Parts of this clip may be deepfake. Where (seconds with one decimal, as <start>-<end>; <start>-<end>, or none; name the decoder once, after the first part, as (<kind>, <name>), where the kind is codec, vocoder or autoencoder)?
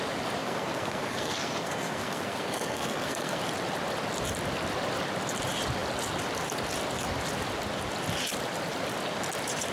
0.4-3.4 (codec, SNAC)